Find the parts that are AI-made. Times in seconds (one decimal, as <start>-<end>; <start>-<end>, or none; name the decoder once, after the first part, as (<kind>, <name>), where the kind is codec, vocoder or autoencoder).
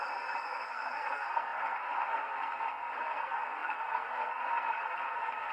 0.0-5.5 (codec, SNAC)